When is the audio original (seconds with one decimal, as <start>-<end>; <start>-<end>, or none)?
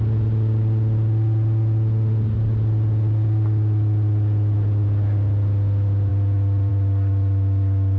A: 0.0-8.0